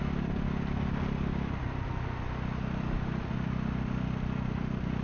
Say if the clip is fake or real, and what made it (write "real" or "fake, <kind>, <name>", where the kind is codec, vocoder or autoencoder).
real